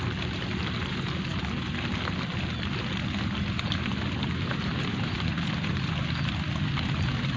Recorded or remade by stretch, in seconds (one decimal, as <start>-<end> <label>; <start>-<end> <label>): 0.0-4.2 recorded; 4.2-5.4 remade; 5.4-7.4 recorded